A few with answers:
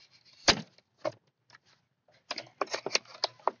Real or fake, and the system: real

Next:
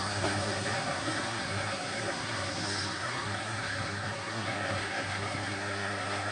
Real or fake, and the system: fake, codec, SNAC